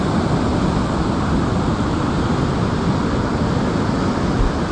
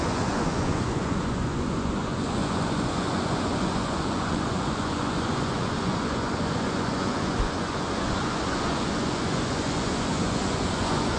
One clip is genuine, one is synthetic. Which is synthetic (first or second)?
second